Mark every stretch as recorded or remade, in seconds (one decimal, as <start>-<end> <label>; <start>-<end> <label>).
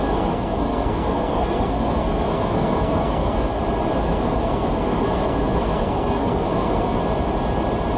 0.0-3.5 remade; 3.5-4.0 recorded; 4.0-7.0 remade; 7.0-8.0 recorded